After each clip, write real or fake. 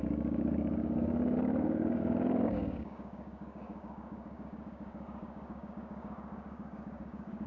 fake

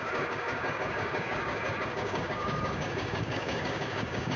fake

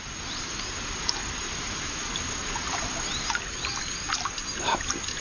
real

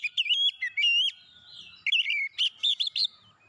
real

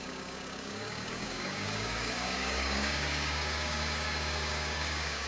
fake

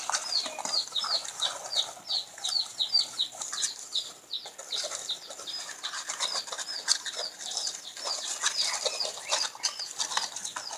real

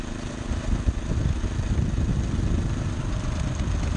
real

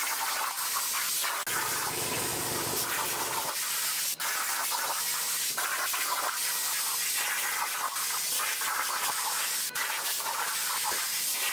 real